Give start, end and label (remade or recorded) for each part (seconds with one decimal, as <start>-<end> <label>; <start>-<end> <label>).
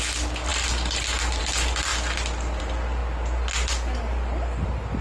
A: 0.0-5.0 recorded